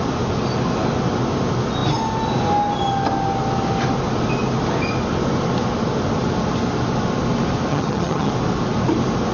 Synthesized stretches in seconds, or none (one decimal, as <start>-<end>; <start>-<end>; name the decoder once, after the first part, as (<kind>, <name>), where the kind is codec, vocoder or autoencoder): 7.7-8.3 (vocoder, HiFi-GAN)